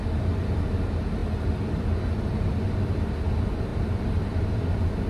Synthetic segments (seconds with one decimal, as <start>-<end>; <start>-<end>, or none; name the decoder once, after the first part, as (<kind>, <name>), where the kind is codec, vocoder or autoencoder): none